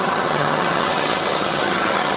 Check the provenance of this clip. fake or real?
fake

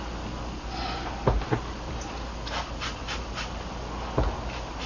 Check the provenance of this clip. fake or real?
real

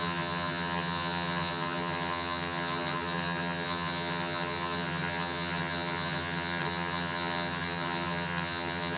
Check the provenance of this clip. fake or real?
fake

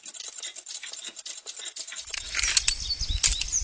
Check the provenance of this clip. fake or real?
real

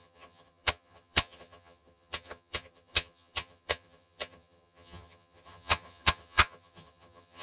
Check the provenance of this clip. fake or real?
fake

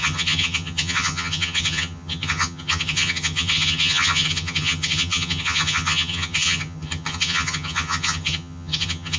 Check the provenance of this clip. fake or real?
fake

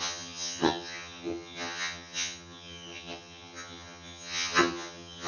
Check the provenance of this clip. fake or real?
fake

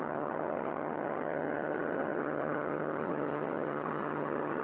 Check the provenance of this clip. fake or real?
fake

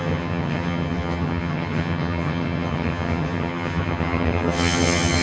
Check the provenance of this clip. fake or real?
fake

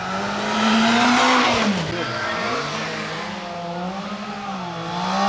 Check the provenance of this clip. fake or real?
real